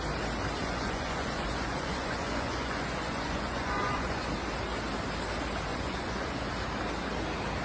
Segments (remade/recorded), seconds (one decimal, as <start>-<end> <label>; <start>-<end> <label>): 0.0-0.6 recorded; 0.6-4.3 remade; 4.3-5.7 recorded; 5.7-6.5 remade; 6.5-7.6 recorded